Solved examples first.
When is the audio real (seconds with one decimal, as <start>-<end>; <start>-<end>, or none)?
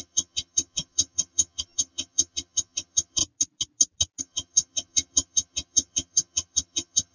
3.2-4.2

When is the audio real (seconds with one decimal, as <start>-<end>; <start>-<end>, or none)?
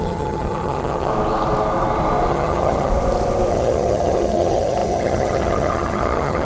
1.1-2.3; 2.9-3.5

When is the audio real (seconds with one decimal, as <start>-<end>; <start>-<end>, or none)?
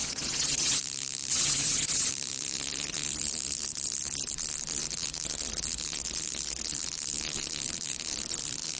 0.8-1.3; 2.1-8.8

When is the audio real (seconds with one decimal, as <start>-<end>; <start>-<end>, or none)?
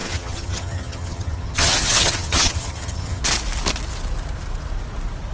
3.2-5.3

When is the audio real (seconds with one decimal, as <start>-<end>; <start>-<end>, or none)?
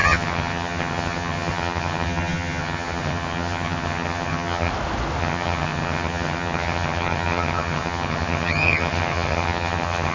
4.7-5.2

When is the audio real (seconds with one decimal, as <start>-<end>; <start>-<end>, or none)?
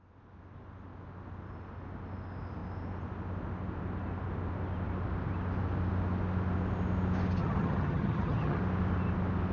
0.0-7.4; 8.6-9.5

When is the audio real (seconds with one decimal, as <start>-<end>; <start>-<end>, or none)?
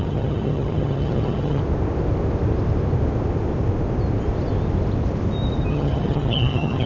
1.6-5.7